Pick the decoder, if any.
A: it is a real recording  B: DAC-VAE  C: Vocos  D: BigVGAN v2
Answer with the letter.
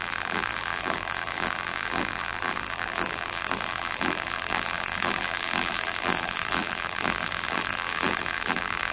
D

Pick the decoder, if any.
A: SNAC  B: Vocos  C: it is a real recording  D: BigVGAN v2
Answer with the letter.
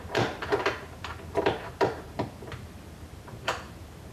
D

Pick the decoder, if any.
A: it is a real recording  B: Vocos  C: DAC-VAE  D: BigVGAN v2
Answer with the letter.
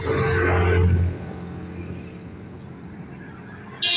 A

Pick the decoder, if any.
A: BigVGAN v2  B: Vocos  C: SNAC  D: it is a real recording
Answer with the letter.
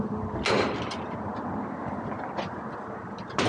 D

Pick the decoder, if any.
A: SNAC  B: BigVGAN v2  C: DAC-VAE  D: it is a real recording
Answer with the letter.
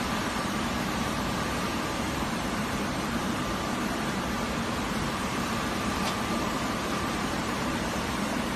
B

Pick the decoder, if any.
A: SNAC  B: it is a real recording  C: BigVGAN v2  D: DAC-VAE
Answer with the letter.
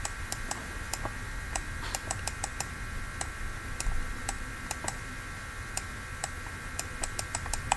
C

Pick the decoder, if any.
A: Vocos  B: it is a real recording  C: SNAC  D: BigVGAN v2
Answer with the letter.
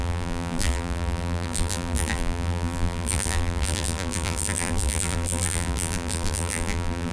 D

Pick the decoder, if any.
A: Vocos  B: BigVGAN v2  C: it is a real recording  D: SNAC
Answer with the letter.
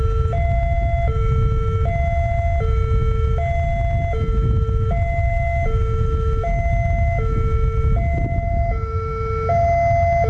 C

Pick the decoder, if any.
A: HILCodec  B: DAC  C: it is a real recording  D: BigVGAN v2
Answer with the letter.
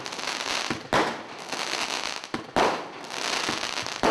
C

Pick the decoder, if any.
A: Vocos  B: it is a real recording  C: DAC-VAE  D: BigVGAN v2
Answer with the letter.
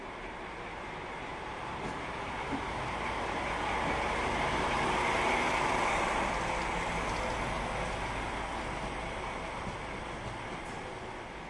B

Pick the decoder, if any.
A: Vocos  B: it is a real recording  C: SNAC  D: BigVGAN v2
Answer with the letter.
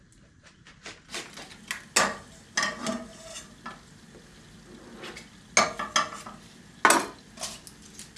B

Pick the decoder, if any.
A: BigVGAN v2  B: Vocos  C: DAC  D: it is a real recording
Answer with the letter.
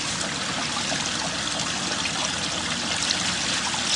D